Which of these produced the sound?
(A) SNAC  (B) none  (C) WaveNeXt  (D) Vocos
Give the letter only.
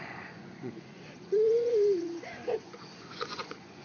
D